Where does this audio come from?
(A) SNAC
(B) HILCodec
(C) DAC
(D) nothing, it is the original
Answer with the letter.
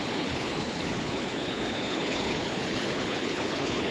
B